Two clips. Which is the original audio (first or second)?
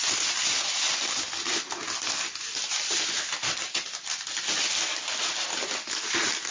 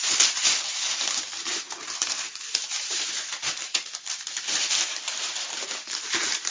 first